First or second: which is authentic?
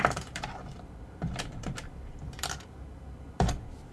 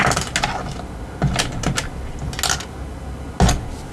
second